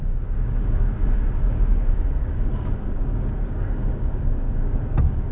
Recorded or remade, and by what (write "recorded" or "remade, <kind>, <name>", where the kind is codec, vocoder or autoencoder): remade, codec, DAC